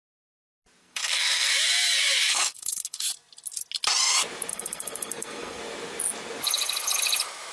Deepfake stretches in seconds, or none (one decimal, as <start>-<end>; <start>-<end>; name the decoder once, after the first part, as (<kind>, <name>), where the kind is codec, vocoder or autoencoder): 0.8-1.5 (codec, SNAC); 2.3-3.1; 4.5-5.6